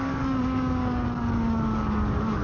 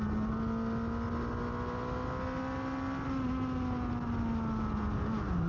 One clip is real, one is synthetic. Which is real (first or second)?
second